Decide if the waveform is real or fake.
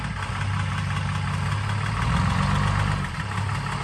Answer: real